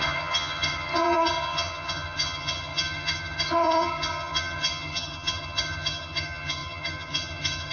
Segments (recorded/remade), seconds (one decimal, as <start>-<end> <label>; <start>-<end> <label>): 0.0-7.7 remade